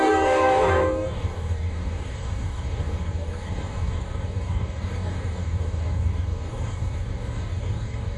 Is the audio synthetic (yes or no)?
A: yes